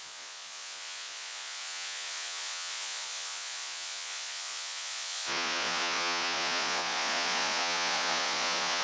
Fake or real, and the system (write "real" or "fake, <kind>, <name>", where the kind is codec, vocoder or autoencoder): fake, vocoder, Vocos